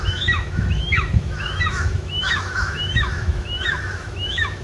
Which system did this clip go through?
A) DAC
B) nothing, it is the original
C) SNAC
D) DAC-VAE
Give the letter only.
D